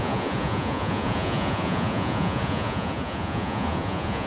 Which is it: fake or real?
fake